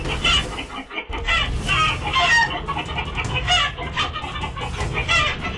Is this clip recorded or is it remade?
recorded